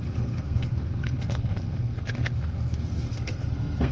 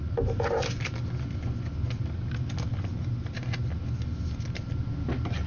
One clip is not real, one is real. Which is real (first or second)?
second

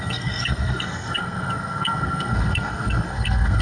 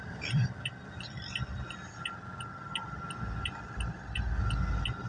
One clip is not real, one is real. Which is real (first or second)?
second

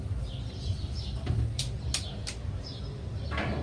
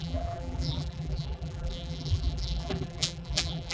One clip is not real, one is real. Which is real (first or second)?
first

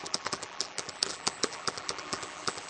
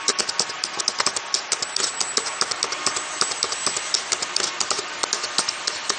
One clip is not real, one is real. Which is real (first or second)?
second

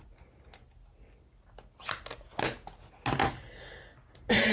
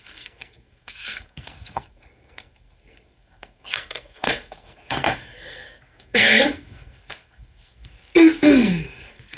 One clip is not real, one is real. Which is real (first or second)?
first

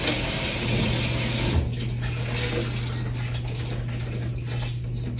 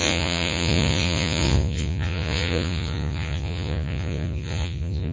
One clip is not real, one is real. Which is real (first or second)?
first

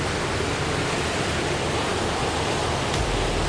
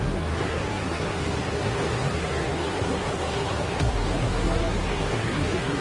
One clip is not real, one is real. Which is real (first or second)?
first